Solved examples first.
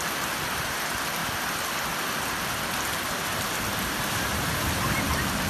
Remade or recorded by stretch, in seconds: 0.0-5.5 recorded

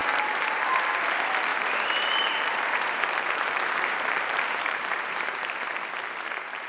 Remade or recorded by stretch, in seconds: 0.0-0.6 remade; 0.6-1.5 recorded; 1.5-5.5 remade; 5.5-6.7 recorded

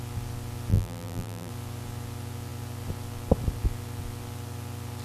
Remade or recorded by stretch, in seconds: 0.0-0.7 recorded; 0.7-1.5 remade; 1.5-5.0 recorded

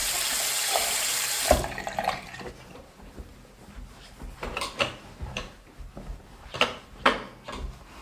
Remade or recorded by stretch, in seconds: 0.0-2.5 remade; 2.5-3.3 recorded; 3.3-7.0 remade; 7.0-8.0 recorded

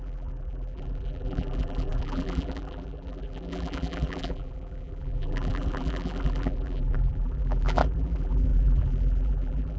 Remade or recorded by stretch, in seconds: 0.0-9.8 remade